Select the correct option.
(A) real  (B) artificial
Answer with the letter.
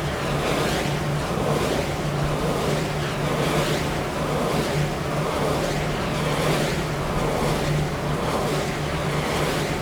A